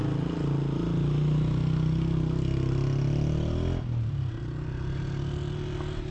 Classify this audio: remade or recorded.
recorded